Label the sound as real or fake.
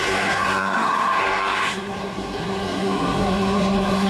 fake